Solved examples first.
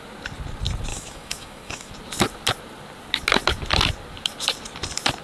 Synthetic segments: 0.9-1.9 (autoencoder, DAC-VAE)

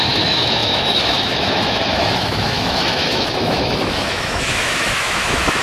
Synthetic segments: 0.0-5.6 (autoencoder, DAC-VAE)

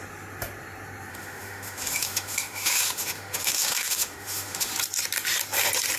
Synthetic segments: 1.1-4.7 (autoencoder, DAC-VAE)